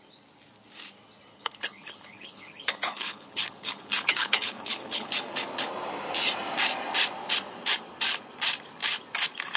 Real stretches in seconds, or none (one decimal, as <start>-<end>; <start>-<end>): 0.0-1.3; 5.1-9.6